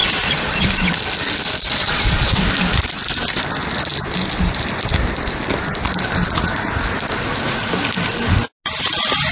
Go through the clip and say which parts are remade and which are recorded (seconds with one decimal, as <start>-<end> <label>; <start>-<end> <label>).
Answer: 0.0-0.7 remade; 0.7-1.8 recorded; 1.8-2.5 remade; 2.5-9.3 recorded